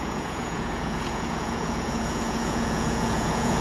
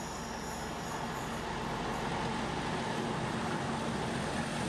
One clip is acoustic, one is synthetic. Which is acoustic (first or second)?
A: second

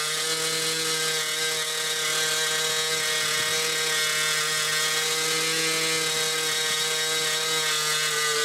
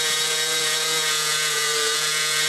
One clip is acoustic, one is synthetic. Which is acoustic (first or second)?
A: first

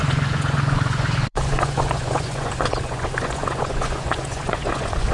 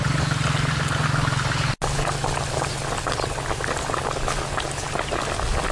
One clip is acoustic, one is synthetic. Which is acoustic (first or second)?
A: second